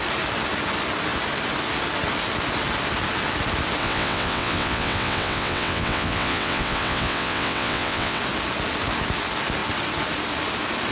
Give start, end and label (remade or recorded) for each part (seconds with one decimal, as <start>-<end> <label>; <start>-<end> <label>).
0.0-3.8 recorded; 3.8-8.2 remade; 8.2-10.9 recorded